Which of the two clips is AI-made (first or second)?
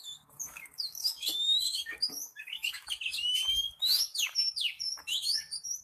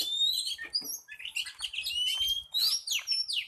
first